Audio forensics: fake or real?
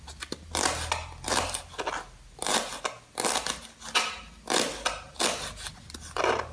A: real